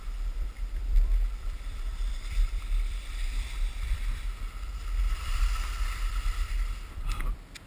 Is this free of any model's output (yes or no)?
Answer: no